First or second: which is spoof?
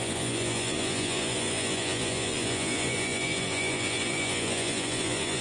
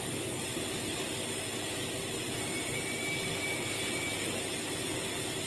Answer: first